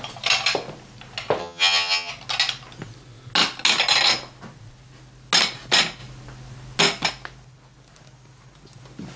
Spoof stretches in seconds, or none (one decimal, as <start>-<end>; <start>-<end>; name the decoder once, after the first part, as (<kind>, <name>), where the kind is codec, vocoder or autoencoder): 1.4-2.1 (vocoder, HiFi-GAN)